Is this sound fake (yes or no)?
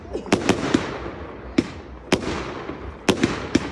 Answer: no